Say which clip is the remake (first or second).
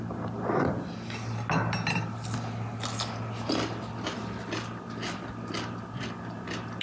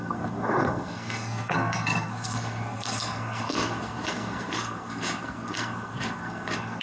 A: second